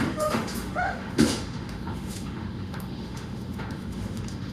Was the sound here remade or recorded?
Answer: remade